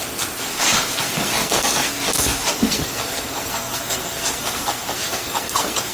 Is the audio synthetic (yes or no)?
yes